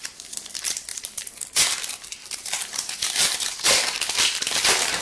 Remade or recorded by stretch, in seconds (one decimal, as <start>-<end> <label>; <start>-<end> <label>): 0.0-0.9 recorded; 0.9-1.5 remade; 1.5-2.2 recorded; 2.2-4.0 remade; 4.0-5.0 recorded